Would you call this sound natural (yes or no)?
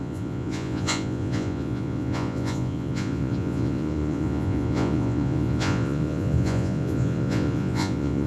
no